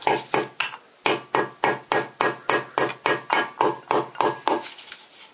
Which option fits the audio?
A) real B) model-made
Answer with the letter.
A